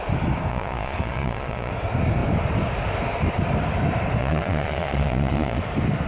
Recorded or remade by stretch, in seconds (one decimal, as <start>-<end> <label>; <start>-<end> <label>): 0.0-0.5 recorded; 0.5-1.7 remade; 1.7-4.2 recorded; 4.2-5.6 remade; 5.6-6.1 recorded